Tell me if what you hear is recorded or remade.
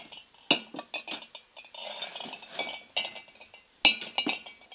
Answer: recorded